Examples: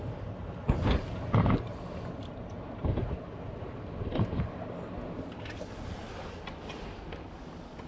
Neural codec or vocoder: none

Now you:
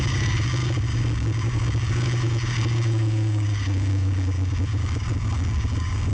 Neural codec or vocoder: codec, DAC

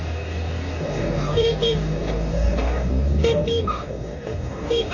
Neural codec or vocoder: codec, DAC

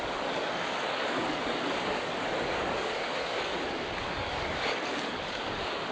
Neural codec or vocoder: codec, DAC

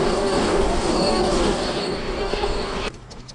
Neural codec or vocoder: codec, DAC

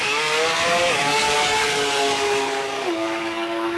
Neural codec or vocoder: codec, DAC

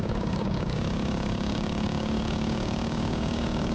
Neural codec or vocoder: codec, DAC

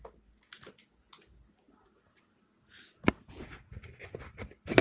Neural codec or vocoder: none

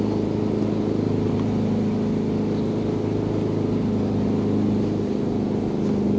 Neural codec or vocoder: none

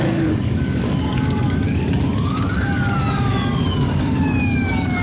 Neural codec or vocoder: codec, DAC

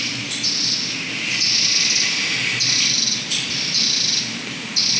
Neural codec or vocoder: none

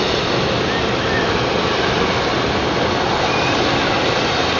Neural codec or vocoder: none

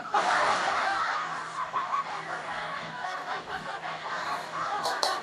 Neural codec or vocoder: codec, DAC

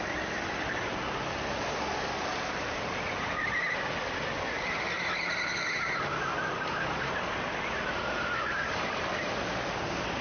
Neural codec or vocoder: none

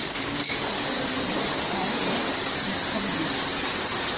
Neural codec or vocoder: none